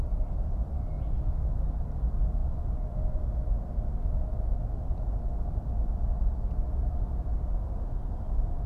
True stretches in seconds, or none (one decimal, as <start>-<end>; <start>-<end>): 0.0-8.7

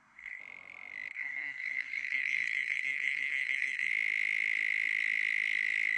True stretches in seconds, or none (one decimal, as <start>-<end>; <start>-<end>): 0.4-1.1; 3.9-6.0

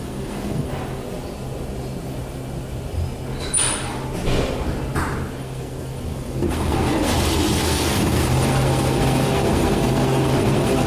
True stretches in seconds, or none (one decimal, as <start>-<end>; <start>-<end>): 0.7-5.4; 7.1-7.6

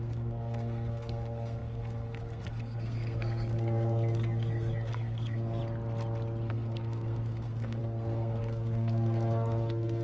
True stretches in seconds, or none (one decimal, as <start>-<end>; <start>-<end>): 5.6-6.5

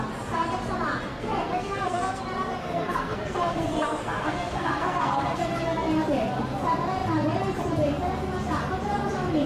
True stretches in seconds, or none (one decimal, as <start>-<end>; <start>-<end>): 0.0-1.1; 2.2-2.6; 5.9-9.5

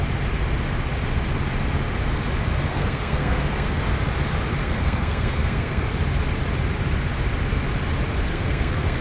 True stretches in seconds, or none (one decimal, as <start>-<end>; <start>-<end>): 0.0-2.7; 3.8-4.6; 5.9-8.3

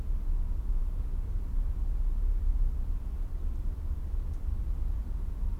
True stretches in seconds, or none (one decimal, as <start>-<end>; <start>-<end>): 0.0-5.6

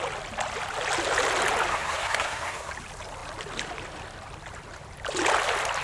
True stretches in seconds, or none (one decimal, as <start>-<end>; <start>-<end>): 0.0-1.7; 2.7-5.8